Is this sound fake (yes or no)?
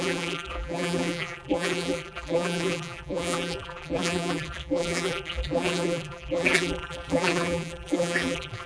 yes